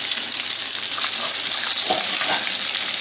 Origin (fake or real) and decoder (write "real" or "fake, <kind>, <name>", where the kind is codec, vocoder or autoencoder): real